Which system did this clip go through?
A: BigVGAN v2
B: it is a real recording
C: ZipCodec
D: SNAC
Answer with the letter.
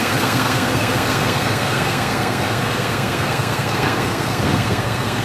D